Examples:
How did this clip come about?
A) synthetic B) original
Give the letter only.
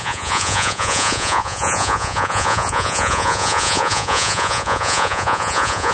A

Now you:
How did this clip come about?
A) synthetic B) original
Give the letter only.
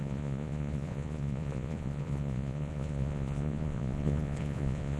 A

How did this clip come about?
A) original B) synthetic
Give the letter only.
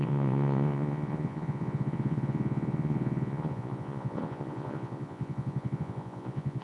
B